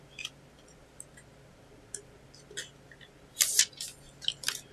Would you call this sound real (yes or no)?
yes